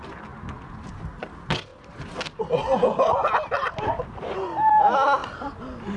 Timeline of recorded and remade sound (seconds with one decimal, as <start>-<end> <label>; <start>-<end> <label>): 0.0-5.2 recorded; 5.2-6.0 remade